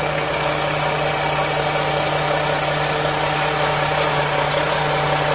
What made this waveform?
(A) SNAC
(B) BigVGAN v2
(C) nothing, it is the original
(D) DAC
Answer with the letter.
C